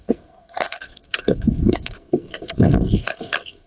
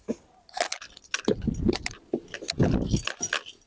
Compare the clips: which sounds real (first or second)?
second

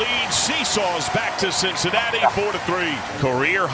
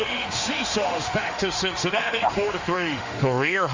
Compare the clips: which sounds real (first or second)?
first